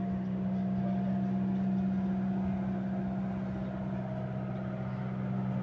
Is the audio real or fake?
real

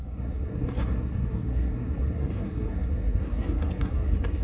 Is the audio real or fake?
fake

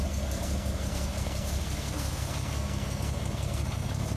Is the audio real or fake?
fake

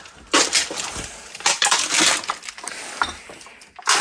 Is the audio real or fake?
real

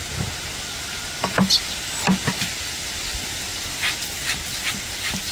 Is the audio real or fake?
real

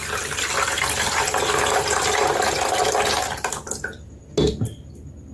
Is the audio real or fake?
real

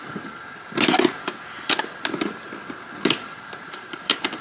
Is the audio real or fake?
real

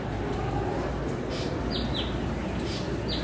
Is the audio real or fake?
real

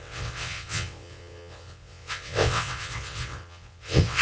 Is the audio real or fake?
fake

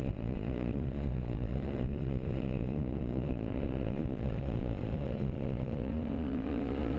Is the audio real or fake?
fake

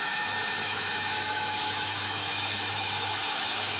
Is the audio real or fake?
fake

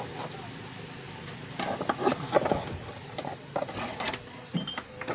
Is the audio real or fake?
real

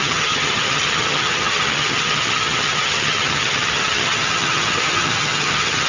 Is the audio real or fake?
fake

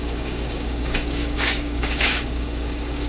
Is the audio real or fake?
fake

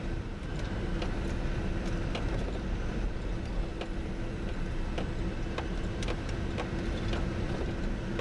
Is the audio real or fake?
real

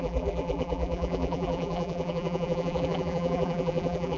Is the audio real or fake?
fake